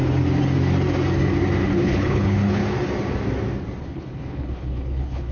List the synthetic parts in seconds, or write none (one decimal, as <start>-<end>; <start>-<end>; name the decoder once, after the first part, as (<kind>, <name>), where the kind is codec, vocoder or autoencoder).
1.7-2.6 (codec, HILCodec); 3.8-5.3